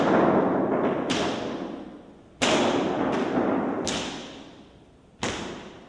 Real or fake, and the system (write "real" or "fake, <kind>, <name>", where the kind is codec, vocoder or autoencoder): real